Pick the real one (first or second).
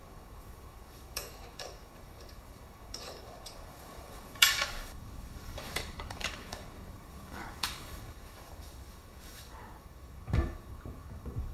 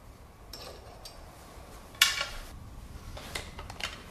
second